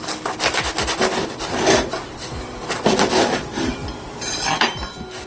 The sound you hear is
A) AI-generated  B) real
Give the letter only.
B